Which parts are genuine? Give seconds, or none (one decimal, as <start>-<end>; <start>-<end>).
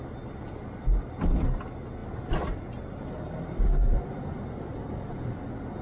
0.0-5.8